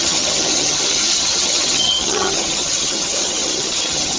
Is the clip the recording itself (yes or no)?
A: no